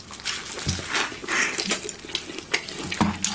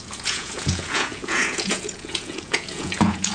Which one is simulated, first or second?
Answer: second